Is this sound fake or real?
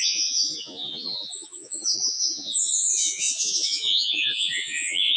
fake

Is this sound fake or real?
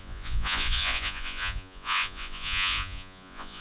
fake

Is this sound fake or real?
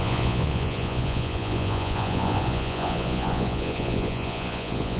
fake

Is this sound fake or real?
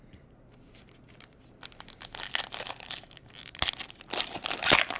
real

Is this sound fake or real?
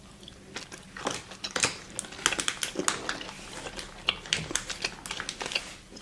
real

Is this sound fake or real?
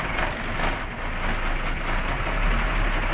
real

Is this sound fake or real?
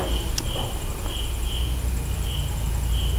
real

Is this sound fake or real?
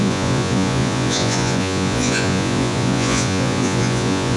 fake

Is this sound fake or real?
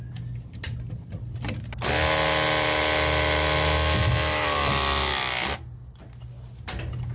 real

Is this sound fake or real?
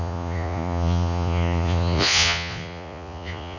fake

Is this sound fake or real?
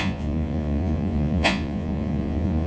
fake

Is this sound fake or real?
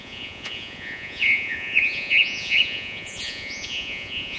fake